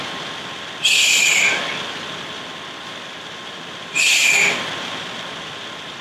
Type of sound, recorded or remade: remade